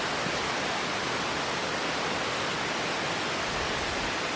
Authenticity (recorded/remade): recorded